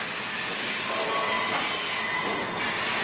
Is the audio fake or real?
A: real